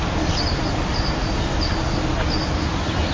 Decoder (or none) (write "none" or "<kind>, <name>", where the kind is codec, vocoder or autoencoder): none